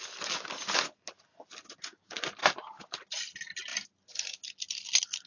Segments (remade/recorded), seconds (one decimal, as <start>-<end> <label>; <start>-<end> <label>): 0.0-2.4 recorded; 2.4-3.0 remade; 3.0-5.3 recorded